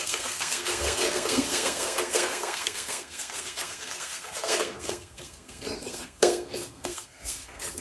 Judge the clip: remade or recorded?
remade